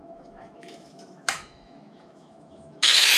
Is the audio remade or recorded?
remade